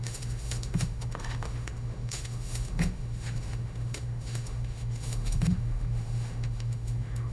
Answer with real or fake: fake